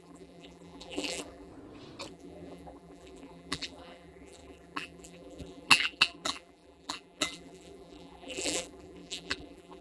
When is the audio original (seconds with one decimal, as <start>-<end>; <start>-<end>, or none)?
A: 1.5-2.1